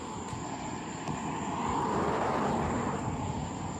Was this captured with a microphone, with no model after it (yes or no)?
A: yes